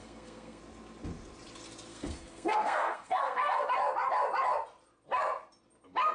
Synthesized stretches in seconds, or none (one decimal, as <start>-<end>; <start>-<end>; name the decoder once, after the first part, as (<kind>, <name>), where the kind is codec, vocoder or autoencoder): 0.0-0.6 (codec, SNAC); 1.9-3.7

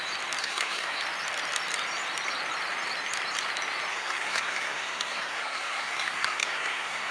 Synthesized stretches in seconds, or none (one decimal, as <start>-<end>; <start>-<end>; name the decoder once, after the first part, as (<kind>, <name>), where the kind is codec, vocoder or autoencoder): 0.4-1.0 (codec, SNAC); 3.9-7.1

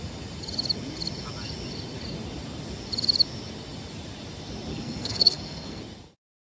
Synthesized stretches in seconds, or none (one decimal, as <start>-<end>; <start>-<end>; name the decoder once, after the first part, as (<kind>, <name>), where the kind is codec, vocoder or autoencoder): 4.7-5.8 (codec, SNAC)

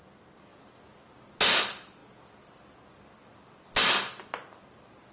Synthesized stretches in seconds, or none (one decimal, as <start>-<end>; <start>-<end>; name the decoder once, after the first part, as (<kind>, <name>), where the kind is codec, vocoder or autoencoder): none

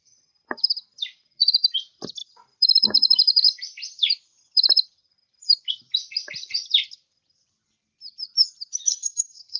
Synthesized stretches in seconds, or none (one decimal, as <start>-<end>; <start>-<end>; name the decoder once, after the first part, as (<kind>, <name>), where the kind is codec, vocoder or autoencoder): 8.9-9.6 (codec, SNAC)